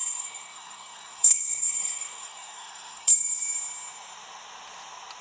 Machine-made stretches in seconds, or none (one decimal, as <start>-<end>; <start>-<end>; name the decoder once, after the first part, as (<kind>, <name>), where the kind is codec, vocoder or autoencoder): 0.0-3.1 (codec, SNAC)